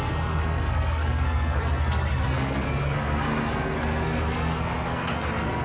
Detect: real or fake fake